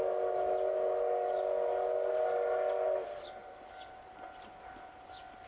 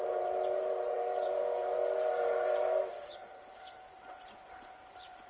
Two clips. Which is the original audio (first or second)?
first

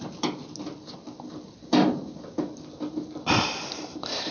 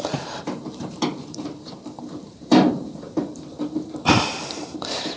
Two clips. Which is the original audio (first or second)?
first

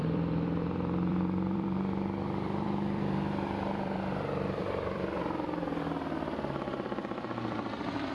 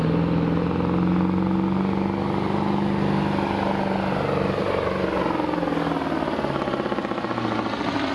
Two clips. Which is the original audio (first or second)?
second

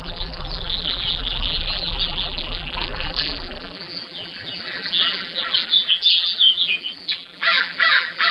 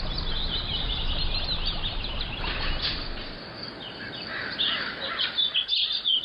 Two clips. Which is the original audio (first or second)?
second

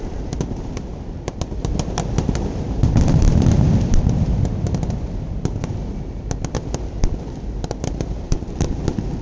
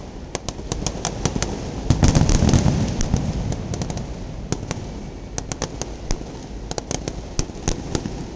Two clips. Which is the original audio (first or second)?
second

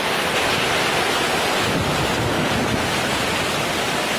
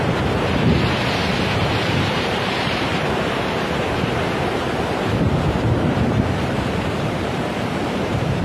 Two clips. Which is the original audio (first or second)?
first